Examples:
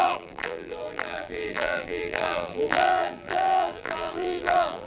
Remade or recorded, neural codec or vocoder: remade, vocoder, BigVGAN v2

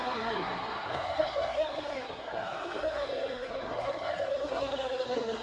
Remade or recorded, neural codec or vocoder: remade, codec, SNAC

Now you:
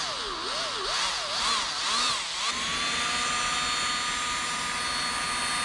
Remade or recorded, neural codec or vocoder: recorded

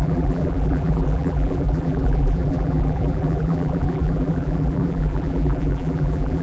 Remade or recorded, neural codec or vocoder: remade, vocoder, BigVGAN v2